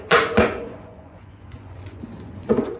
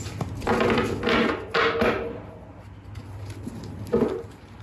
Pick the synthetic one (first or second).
first